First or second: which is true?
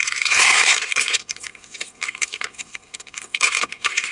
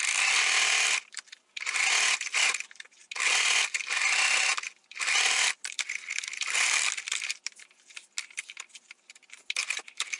second